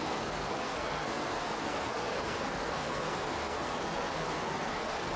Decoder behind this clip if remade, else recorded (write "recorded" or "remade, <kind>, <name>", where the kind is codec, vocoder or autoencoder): remade, codec, SNAC